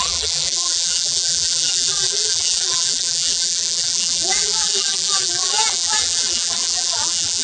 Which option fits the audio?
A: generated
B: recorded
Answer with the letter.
A